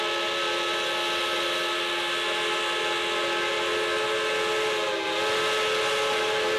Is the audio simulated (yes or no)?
no